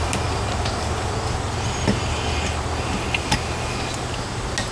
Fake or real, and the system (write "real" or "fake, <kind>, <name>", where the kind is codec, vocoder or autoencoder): real